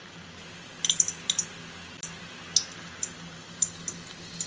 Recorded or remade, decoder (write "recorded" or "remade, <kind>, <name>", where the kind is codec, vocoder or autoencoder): recorded